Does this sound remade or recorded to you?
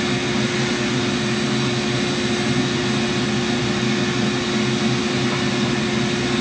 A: recorded